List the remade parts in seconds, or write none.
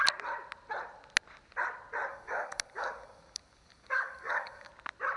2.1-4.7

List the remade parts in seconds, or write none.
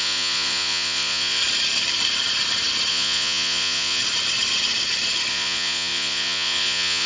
0.0-1.4; 2.9-4.0; 5.3-7.1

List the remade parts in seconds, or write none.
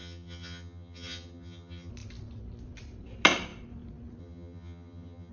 0.0-1.9; 4.2-5.3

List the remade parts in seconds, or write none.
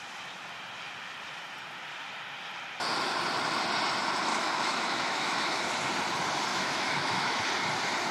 4.3-5.6; 6.5-7.4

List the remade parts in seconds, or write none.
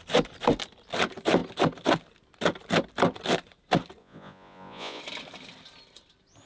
4.0-5.0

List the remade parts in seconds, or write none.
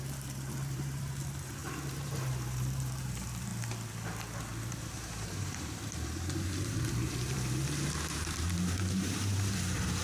0.0-3.5; 4.7-10.0